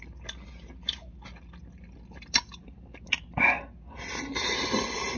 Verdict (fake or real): real